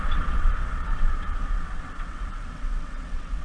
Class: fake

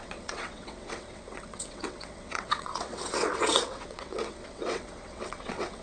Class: fake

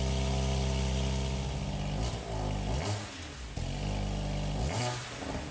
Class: real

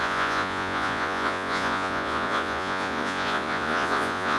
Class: fake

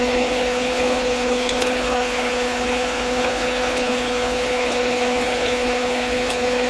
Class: fake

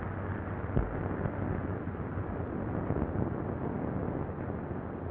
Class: real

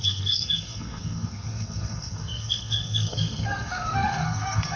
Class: fake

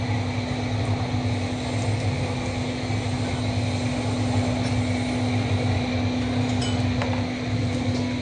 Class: real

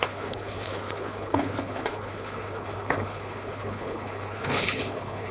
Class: fake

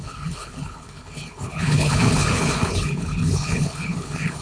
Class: fake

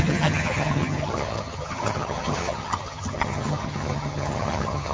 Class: fake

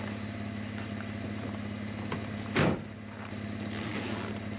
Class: real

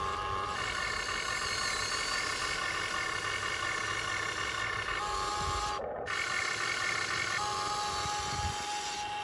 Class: real